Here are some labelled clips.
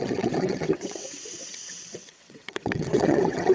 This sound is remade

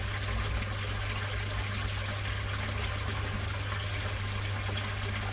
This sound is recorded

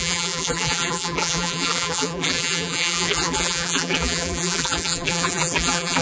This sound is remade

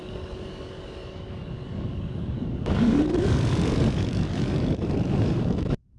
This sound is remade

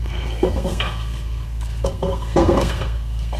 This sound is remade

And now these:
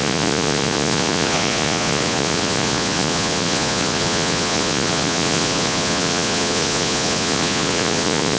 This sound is remade